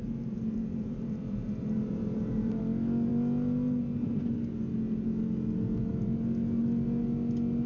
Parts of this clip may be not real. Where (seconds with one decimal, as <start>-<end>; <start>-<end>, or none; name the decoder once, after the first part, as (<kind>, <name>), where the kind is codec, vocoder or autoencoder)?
0.0-2.6 (vocoder, BigVGAN v2)